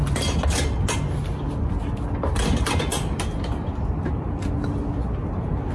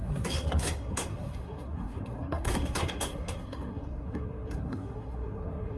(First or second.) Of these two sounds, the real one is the first